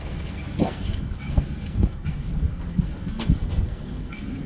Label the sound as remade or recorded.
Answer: remade